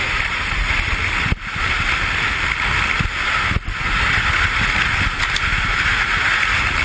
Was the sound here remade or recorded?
recorded